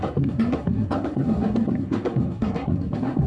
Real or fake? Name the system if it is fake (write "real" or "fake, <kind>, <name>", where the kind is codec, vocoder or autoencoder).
fake, codec, SNAC